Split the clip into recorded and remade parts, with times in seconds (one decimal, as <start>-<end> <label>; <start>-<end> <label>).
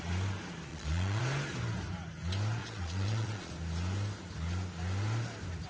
0.0-0.7 recorded; 0.7-1.2 remade; 1.2-2.6 recorded; 2.6-3.5 remade; 3.5-5.7 recorded